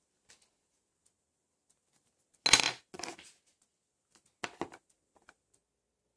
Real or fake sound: real